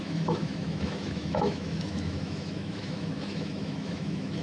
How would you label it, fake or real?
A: fake